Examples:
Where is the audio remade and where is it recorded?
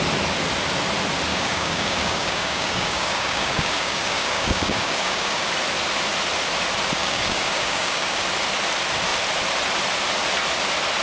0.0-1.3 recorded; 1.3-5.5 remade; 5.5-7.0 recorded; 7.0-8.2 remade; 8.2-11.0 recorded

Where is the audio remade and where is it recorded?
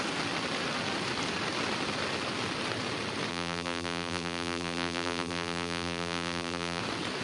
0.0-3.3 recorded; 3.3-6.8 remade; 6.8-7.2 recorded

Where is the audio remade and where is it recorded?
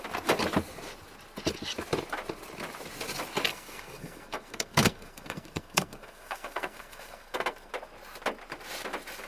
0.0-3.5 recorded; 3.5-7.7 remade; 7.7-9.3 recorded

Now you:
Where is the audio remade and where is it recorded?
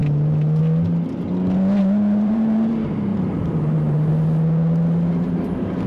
0.0-1.8 recorded; 1.8-2.7 remade; 2.7-3.1 recorded; 3.1-4.1 remade; 4.1-5.9 recorded